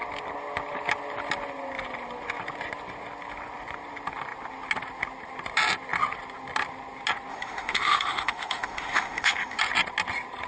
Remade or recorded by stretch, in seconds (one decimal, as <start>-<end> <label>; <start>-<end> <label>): 0.0-7.3 recorded; 7.3-9.6 remade; 9.6-10.5 recorded